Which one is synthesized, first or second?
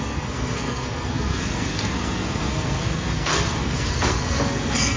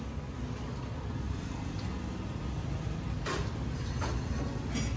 first